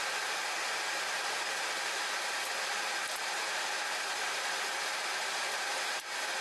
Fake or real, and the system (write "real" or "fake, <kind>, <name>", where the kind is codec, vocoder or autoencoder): real